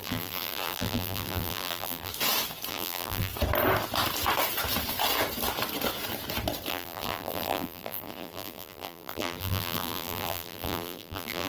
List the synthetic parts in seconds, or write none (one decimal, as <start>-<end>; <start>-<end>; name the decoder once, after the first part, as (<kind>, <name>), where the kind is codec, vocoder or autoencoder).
0.0-2.1 (vocoder, BigVGAN v2); 2.7-3.3; 6.7-11.5

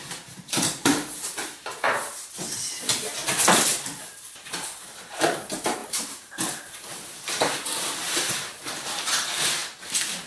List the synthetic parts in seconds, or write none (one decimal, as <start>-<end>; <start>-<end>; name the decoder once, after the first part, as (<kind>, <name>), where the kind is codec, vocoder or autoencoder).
0.0-2.0 (vocoder, BigVGAN v2); 4.5-9.6

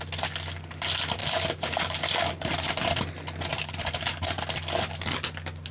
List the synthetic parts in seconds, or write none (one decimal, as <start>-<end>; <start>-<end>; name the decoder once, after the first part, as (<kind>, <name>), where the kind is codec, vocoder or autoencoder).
1.2-2.7 (vocoder, BigVGAN v2); 3.5-4.4

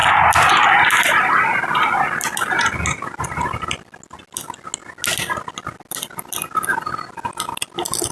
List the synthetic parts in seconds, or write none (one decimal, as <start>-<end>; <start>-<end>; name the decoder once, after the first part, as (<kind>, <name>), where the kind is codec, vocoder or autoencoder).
none